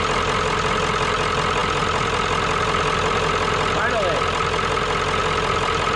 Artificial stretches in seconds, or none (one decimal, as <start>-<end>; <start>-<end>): none